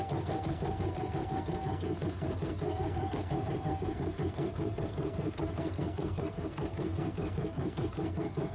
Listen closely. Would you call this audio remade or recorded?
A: remade